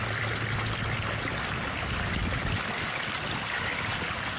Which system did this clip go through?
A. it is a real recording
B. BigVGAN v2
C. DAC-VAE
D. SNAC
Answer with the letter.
A